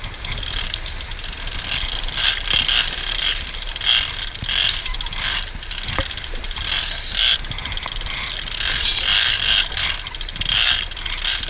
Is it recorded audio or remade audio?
recorded